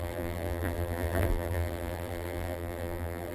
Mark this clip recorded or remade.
remade